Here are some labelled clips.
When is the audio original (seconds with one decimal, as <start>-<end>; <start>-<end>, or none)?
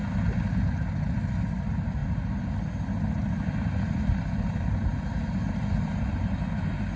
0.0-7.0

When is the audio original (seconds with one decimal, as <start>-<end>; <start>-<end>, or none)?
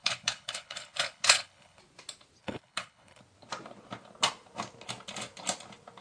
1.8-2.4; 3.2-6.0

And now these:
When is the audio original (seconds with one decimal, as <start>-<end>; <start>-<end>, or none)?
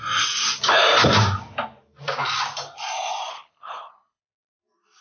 0.0-3.3; 4.2-5.0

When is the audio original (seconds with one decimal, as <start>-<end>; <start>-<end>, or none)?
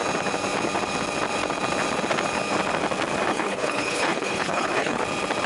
0.0-3.3; 5.0-5.5